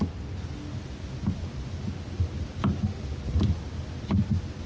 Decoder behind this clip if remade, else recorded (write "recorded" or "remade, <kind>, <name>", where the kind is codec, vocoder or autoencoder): recorded